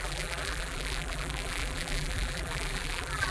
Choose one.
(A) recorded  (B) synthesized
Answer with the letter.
B